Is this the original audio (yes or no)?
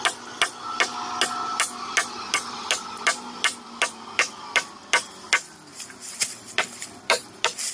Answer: yes